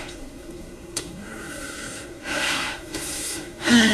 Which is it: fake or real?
fake